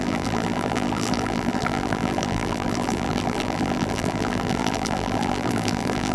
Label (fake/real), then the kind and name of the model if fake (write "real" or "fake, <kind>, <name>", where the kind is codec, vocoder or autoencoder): fake, vocoder, BigVGAN v2